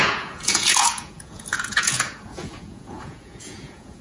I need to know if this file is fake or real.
fake